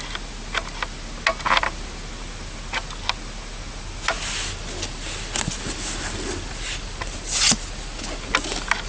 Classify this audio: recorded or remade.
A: recorded